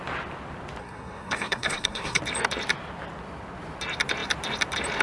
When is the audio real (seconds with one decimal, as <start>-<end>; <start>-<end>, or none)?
0.0-0.8; 2.2-5.0